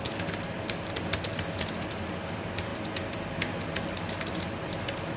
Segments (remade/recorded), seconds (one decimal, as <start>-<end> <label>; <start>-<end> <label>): 0.0-5.2 recorded